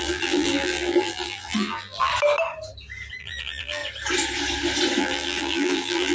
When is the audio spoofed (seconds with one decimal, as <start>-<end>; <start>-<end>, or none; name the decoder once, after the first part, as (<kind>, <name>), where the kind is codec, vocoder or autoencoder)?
0.0-2.1 (vocoder, BigVGAN v2); 3.2-3.8; 5.0-6.1